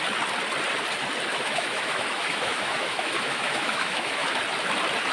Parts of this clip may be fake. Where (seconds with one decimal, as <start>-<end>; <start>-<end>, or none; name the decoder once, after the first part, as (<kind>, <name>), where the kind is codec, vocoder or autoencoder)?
1.3-4.4 (autoencoder, DAC-VAE)